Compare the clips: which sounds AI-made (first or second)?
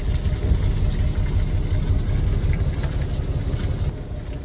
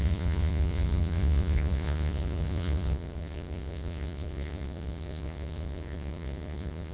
second